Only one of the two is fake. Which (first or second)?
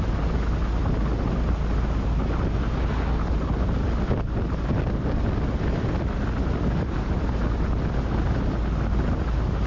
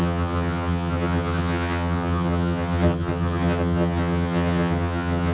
second